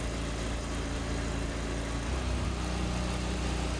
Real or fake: real